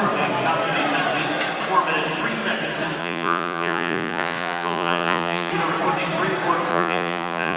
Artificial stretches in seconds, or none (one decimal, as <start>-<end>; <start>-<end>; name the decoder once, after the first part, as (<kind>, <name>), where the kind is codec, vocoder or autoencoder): 3.0-5.5 (vocoder, Vocos); 6.7-7.6